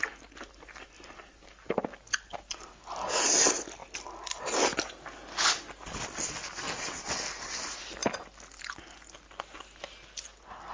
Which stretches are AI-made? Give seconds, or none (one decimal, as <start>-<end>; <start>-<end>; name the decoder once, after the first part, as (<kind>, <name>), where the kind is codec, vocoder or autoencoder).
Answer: none